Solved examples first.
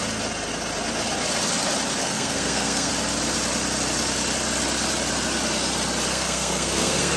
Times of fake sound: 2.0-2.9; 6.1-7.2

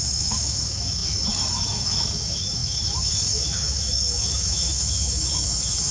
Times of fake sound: 0.0-5.9

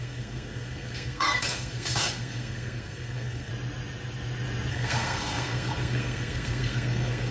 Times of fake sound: 0.0-3.5; 4.7-7.3